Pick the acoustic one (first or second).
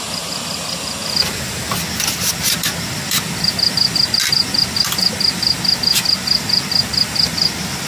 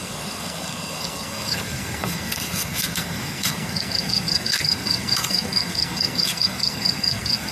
first